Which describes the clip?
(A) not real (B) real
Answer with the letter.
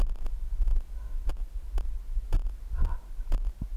B